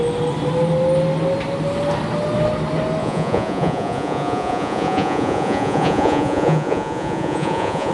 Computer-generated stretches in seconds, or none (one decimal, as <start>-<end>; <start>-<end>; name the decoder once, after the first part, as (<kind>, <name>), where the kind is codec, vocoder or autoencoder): 3.0-7.9 (vocoder, Vocos)